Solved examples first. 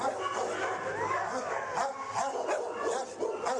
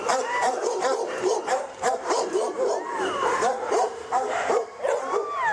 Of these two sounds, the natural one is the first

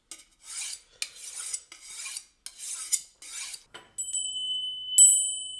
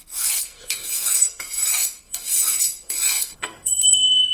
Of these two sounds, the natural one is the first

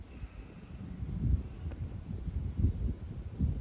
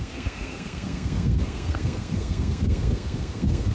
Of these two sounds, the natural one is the first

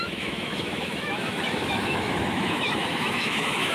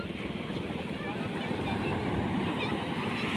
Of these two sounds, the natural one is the second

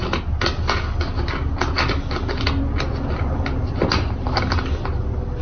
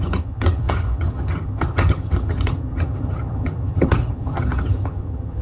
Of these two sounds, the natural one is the first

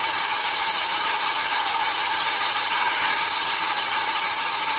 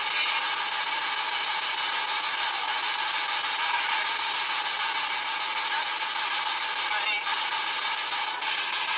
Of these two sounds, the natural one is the second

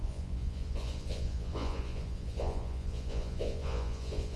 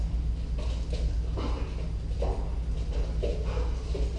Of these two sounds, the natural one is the second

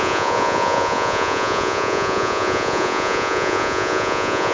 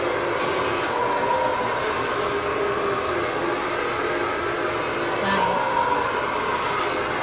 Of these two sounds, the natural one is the second